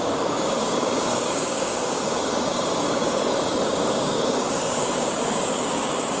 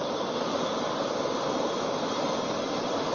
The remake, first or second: first